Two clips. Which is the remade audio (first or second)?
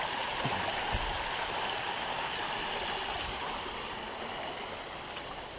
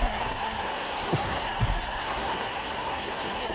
second